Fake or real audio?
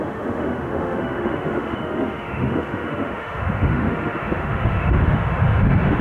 fake